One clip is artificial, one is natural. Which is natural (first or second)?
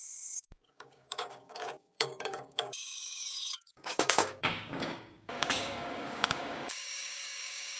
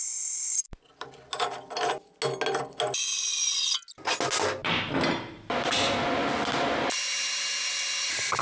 second